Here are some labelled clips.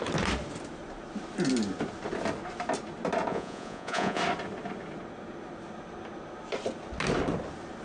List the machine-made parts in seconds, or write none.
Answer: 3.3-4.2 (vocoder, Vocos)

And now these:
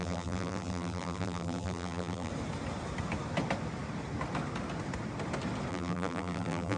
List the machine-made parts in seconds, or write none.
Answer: 0.0-2.3 (vocoder, BigVGAN v2); 5.7-6.8